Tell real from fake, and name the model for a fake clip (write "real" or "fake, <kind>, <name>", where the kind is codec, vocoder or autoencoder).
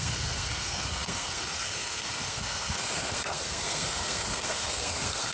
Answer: fake, codec, SNAC